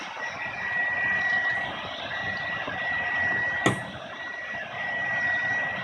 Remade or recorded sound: recorded